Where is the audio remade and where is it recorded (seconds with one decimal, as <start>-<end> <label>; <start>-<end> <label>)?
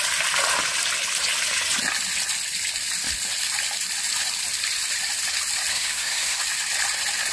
0.0-5.7 recorded; 5.7-6.4 remade; 6.4-7.3 recorded